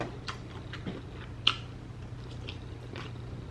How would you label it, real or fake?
fake